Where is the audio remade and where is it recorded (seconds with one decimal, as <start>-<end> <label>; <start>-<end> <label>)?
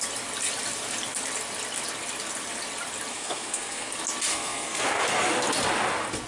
0.0-3.1 recorded; 3.1-3.9 remade; 3.9-4.3 recorded; 4.3-5.0 remade; 5.0-6.3 recorded